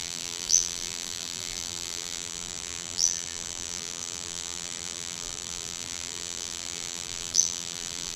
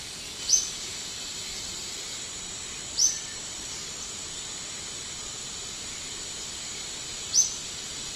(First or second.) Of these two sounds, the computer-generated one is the first